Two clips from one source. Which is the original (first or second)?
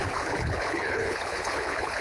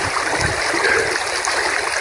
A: second